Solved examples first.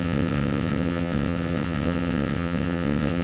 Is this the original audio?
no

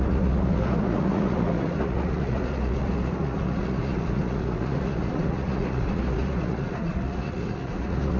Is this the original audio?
no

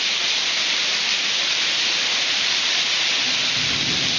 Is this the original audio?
yes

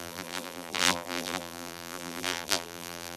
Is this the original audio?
no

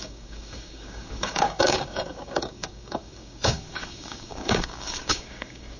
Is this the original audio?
no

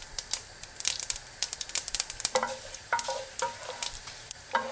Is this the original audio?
no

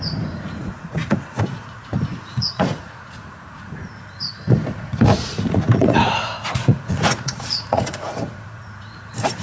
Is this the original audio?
no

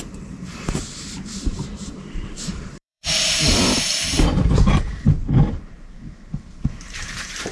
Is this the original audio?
no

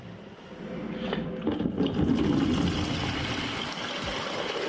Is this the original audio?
yes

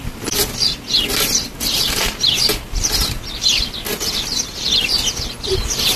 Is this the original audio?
yes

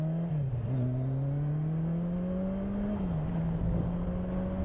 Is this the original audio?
yes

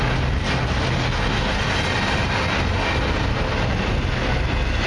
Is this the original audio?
yes